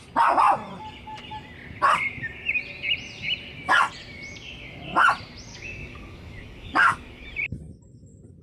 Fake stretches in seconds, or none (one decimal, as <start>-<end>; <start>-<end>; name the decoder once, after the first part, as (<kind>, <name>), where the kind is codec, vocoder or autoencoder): 5.5-7.2 (codec, DAC)